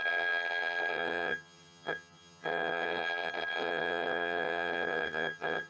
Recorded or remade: remade